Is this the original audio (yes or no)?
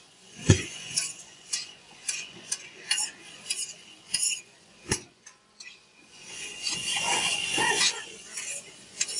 no